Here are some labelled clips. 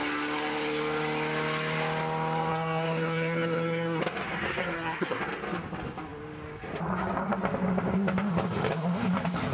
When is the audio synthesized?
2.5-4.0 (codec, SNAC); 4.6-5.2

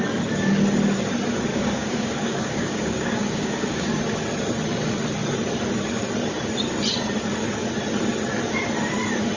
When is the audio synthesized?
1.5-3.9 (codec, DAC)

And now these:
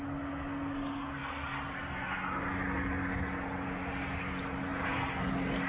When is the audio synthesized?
none

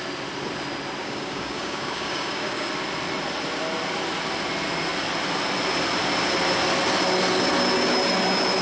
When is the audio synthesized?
1.0-2.7 (codec, DAC)